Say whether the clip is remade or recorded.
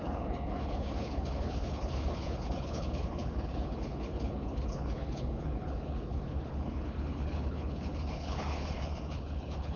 remade